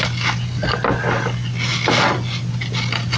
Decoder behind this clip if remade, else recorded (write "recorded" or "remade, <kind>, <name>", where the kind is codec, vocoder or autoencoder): recorded